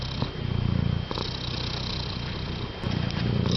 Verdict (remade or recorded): recorded